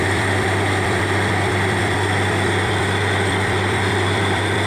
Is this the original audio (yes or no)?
no